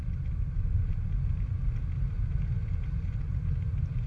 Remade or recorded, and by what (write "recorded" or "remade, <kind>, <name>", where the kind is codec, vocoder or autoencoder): recorded